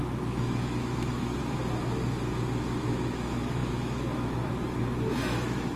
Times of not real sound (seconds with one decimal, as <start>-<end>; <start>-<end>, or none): 0.0-1.4; 2.5-5.8

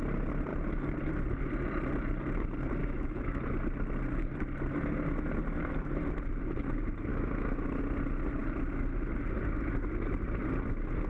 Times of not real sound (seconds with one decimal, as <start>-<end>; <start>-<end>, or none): 2.8-3.4; 7.1-7.8

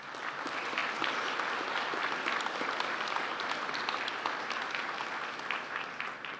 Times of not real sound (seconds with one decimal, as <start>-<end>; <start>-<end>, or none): none

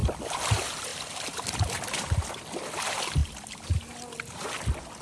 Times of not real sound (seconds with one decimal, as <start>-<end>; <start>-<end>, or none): none